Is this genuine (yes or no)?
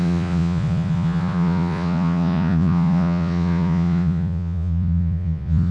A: no